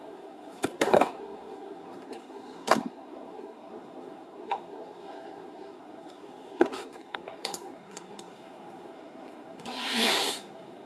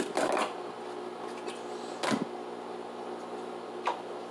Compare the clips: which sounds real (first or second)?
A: second